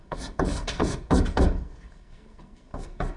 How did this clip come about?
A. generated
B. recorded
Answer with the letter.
A